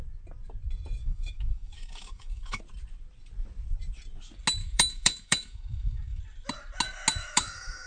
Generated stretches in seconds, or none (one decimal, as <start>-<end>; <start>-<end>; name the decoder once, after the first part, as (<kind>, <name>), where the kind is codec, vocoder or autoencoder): 1.0-2.6 (autoencoder, DAC-VAE); 4.6-6.2; 7.2-7.9